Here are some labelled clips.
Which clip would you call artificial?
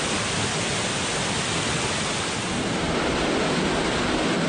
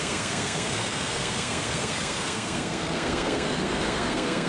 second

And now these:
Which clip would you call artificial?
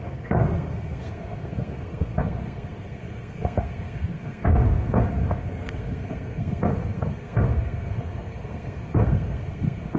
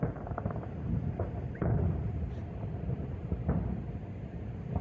first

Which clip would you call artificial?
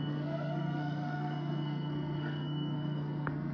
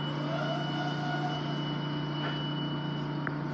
first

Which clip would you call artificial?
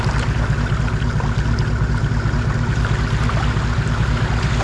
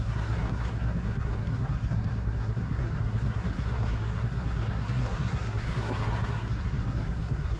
second